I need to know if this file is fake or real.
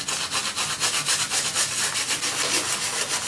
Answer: real